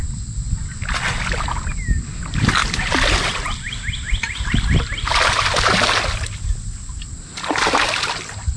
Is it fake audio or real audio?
real